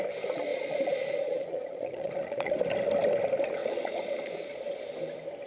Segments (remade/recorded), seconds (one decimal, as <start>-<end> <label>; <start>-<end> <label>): 0.0-0.5 recorded; 0.5-2.5 remade; 2.5-3.6 recorded; 3.6-4.8 remade; 4.8-5.5 recorded

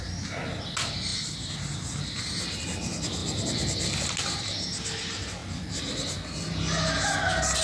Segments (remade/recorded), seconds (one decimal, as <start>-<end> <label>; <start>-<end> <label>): 0.0-7.6 recorded

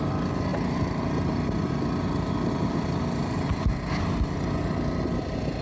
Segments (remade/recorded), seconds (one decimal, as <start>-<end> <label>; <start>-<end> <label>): 0.0-5.6 recorded

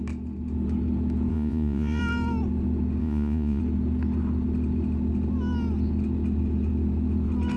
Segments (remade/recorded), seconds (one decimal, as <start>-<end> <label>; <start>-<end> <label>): 0.0-1.3 recorded; 1.3-2.0 remade; 2.0-3.0 recorded; 3.0-3.6 remade; 3.6-7.6 recorded

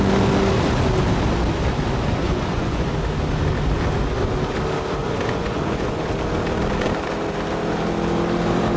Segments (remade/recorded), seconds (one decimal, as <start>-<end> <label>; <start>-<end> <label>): 0.0-2.2 recorded; 2.2-2.9 remade; 2.9-5.0 recorded; 5.0-6.0 remade; 6.0-8.8 recorded

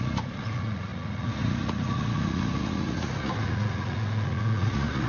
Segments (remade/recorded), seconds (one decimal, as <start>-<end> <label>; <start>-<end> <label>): 0.0-5.1 remade

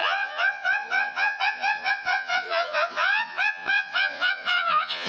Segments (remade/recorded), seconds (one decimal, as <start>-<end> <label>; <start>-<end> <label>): 0.0-5.1 remade

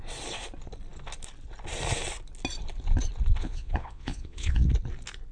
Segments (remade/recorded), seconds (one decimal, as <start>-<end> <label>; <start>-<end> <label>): 0.0-3.4 recorded; 3.4-4.7 remade; 4.7-5.3 recorded